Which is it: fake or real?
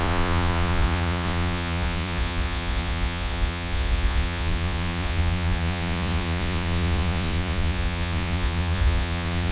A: fake